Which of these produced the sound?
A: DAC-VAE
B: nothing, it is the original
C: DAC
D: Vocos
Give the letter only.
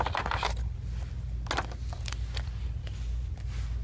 B